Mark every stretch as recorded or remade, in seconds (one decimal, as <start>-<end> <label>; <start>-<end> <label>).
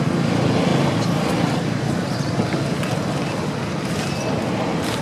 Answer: 0.0-0.7 recorded; 0.7-3.7 remade; 3.7-5.0 recorded